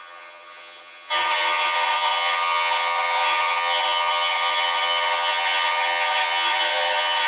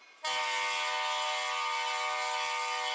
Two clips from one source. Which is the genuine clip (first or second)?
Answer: second